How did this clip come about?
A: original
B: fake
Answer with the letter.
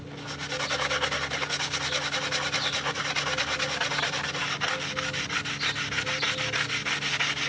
A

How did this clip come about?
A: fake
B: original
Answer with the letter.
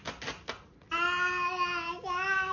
B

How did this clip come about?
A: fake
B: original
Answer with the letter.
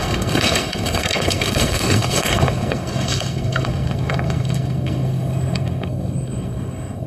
A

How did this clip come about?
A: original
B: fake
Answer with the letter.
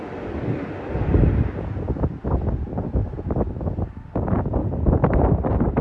A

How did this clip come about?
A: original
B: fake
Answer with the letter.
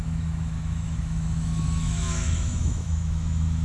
B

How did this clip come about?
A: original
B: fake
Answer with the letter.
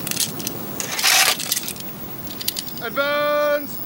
A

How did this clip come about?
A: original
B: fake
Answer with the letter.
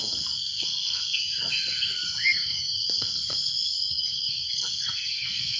B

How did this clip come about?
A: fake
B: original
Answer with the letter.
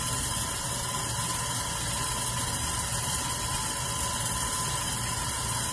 B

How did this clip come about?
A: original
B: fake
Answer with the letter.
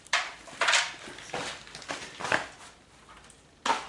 A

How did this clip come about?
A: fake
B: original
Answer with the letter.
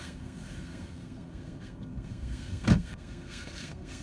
A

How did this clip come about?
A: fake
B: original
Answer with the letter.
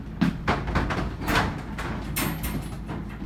B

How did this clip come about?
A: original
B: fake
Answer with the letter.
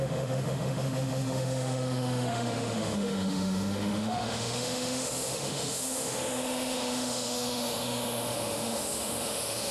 B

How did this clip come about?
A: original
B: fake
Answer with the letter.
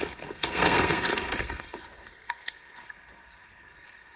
B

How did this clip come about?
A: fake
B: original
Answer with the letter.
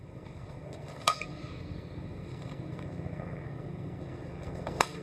A